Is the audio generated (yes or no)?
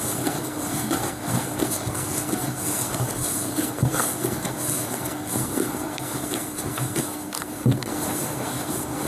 yes